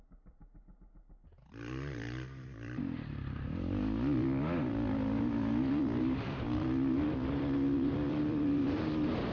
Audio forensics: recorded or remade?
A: remade